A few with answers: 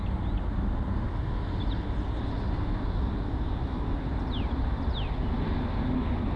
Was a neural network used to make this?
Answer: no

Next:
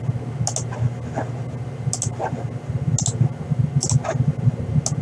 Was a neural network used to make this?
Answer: no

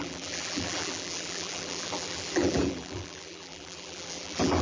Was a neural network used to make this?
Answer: yes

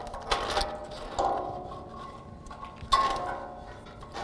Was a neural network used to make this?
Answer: no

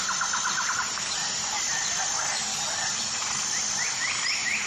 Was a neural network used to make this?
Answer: no